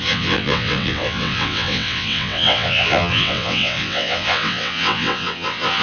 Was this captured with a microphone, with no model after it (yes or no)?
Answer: no